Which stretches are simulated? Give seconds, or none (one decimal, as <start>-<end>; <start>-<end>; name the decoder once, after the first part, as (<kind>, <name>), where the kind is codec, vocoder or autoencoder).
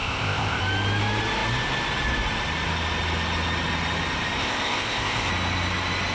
0.0-0.6 (codec, ZipCodec); 4.4-5.3